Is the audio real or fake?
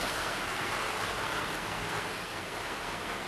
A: fake